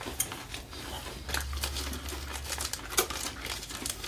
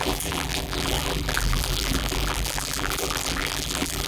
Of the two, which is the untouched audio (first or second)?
first